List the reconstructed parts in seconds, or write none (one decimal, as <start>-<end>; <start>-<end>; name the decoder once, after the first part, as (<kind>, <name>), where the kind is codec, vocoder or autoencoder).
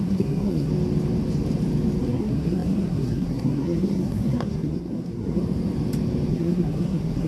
0.0-0.7 (codec, SNAC); 2.0-5.4; 6.3-7.3